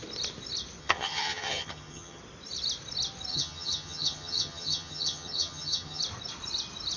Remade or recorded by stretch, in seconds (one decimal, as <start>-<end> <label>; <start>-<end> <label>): 0.0-0.8 recorded; 0.8-2.2 remade; 2.2-3.3 recorded; 3.3-6.0 remade; 6.0-7.0 recorded